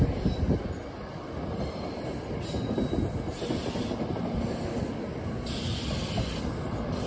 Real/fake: real